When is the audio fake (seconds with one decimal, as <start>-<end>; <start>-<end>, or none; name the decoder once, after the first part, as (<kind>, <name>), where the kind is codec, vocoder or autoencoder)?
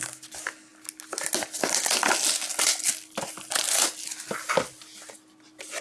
none